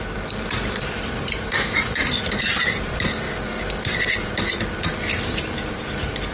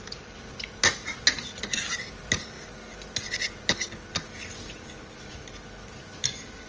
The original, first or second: second